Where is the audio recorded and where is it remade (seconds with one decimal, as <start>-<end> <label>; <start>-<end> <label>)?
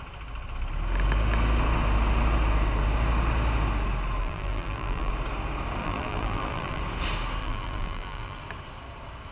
0.0-4.2 recorded; 4.2-5.1 remade; 5.1-5.8 recorded; 5.8-6.8 remade; 6.8-7.4 recorded; 7.4-8.4 remade; 8.4-9.3 recorded